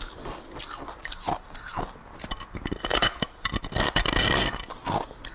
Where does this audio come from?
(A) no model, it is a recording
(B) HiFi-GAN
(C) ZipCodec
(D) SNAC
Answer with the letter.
A